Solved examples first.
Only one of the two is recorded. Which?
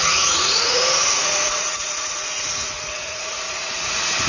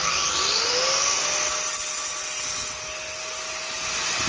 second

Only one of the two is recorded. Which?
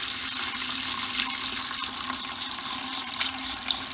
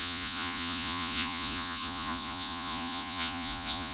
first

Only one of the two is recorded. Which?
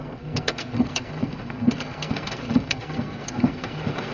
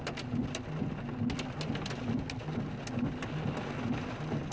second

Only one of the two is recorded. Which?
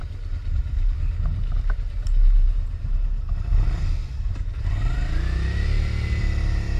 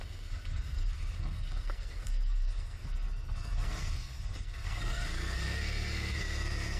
first